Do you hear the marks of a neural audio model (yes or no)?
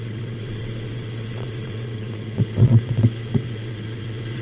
yes